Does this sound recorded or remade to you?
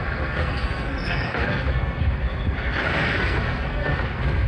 remade